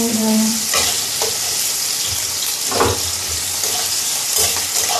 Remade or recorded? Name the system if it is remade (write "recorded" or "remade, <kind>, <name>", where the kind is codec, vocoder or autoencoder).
remade, vocoder, BigVGAN v2